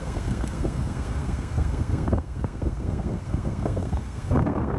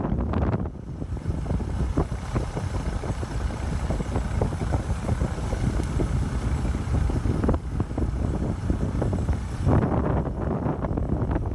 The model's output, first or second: first